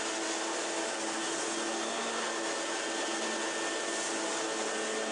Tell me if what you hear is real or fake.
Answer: real